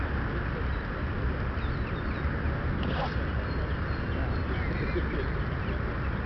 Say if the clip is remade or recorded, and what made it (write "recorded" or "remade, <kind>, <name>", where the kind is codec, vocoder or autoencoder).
recorded